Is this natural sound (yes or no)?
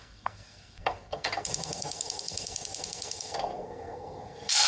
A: no